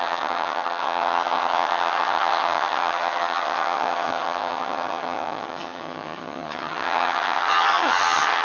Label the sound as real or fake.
fake